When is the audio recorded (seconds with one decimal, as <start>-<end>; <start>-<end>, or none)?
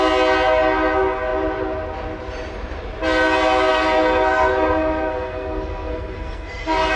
0.0-3.7